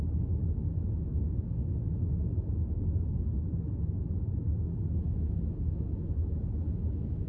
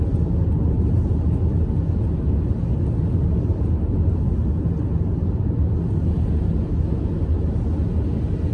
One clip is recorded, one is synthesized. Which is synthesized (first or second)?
first